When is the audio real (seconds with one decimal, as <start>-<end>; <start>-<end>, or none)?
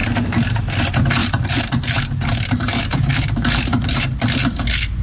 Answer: 0.6-1.2; 4.2-5.0